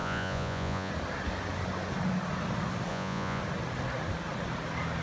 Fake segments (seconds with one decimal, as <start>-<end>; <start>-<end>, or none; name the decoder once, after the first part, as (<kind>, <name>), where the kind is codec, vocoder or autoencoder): 0.0-0.9 (vocoder, Vocos); 2.9-3.4